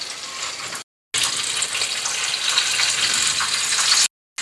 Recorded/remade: recorded